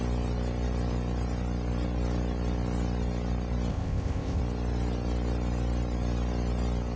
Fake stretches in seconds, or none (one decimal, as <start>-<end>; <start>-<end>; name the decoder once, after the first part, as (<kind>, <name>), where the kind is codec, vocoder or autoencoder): 3.7-4.4 (codec, ZipCodec)